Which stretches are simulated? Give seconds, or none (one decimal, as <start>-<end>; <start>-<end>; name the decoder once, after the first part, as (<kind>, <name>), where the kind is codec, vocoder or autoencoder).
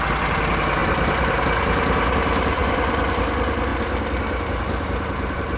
0.8-1.4 (vocoder, BigVGAN v2); 2.6-3.2